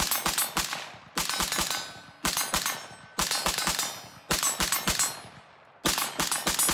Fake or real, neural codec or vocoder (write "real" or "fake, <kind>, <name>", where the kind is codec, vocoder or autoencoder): real